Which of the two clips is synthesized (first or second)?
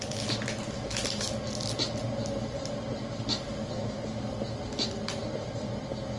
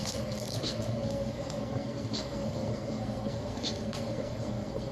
second